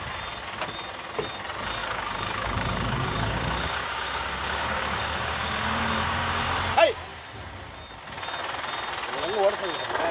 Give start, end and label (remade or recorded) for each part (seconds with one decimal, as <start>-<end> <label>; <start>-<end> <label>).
0.0-1.8 recorded; 1.8-6.5 remade; 6.5-10.1 recorded